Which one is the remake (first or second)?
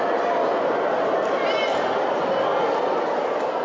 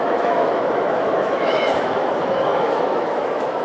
second